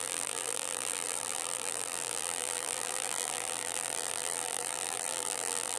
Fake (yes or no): yes